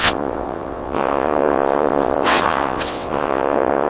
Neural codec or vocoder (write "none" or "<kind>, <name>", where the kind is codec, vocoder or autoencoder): vocoder, WaveNeXt